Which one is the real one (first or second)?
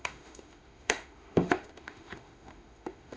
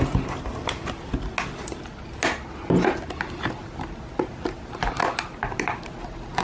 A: second